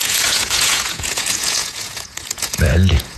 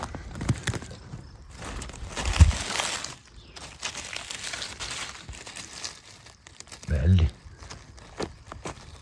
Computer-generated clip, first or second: first